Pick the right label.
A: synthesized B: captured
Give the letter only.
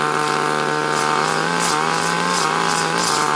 B